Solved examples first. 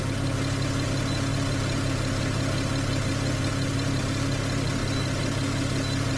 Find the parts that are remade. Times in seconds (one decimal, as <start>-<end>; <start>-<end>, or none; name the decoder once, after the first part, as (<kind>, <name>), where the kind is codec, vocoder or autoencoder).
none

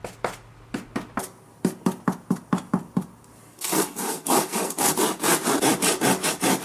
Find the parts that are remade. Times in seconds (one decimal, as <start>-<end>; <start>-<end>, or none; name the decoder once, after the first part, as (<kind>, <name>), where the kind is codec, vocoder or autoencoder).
3.5-4.9 (codec, SNAC)

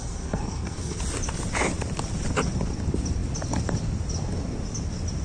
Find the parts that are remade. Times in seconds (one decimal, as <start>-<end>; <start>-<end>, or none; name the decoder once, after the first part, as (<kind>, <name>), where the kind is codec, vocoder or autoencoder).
0.0-1.0 (codec, SNAC)